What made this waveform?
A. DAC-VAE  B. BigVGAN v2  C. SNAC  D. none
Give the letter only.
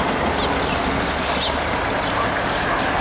D